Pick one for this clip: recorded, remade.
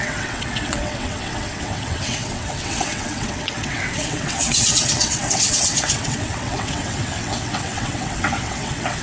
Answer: remade